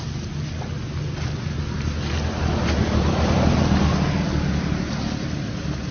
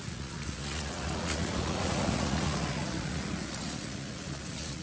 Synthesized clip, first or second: second